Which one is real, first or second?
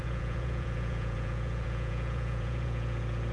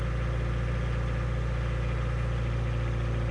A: second